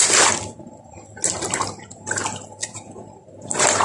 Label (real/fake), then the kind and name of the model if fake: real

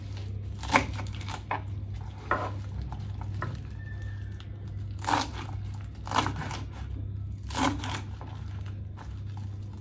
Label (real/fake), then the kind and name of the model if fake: real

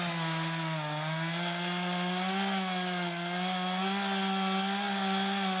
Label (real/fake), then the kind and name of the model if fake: real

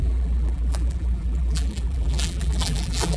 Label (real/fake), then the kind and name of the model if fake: fake, vocoder, BigVGAN v2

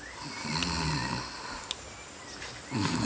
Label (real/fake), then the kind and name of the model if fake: real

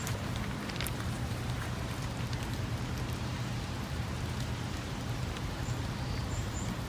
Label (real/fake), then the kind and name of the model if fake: fake, vocoder, BigVGAN v2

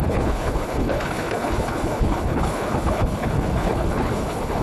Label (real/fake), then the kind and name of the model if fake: fake, codec, HILCodec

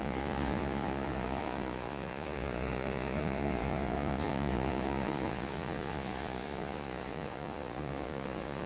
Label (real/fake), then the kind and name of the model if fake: fake, vocoder, Vocos